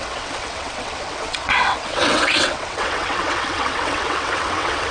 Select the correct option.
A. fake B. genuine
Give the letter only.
A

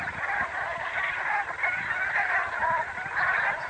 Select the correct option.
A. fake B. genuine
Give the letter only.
B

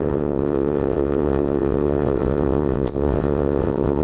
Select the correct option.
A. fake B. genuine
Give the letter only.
A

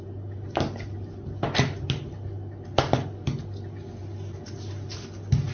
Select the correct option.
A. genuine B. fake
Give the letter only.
A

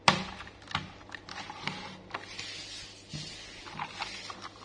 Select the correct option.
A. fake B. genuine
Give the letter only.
B